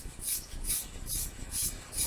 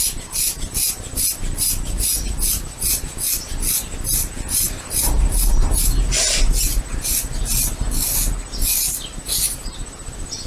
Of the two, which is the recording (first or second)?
second